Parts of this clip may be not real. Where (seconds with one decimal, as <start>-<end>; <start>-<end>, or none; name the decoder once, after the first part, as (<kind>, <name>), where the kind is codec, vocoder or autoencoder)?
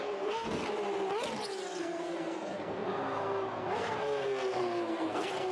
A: 0.0-0.6 (codec, SNAC); 1.8-5.5